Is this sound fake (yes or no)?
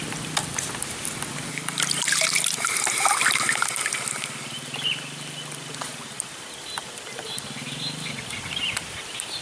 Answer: no